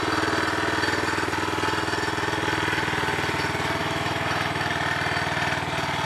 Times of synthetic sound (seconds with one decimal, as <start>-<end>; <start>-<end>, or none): 3.8-4.7